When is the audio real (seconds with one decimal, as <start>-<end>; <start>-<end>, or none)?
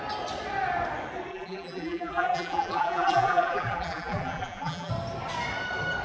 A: 0.0-1.3; 4.9-6.0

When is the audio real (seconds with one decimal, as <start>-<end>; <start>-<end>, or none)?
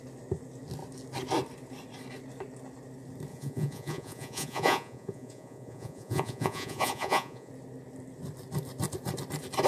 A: 0.0-3.3; 7.5-9.7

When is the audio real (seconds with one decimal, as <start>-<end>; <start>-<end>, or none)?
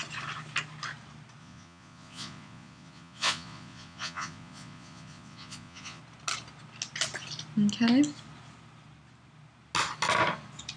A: 0.0-1.4; 6.0-10.8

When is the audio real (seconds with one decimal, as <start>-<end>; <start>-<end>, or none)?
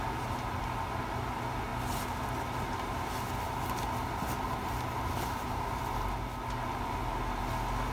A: 0.0-7.9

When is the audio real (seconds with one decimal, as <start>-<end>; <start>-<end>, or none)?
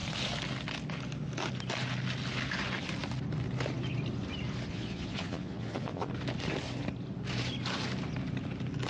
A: 0.0-4.7; 6.1-8.9